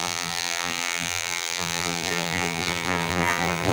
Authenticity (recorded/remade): remade